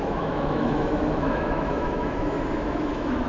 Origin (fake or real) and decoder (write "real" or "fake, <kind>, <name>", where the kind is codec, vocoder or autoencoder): fake, autoencoder, DAC-VAE